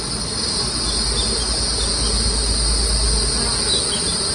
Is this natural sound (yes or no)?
yes